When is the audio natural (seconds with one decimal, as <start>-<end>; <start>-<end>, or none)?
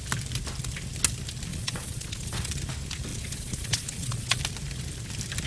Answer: 0.0-1.5; 2.5-3.1; 4.4-5.5